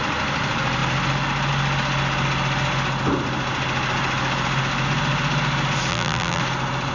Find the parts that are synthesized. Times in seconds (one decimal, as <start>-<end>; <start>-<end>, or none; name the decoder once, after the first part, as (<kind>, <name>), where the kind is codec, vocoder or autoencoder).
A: 5.9-6.4 (vocoder, BigVGAN v2)